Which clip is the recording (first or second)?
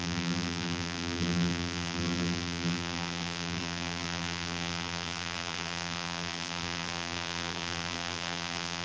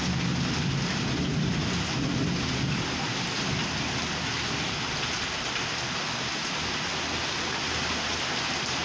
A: second